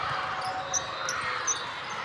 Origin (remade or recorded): recorded